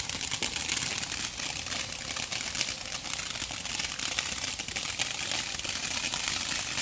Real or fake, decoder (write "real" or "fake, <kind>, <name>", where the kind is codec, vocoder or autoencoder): real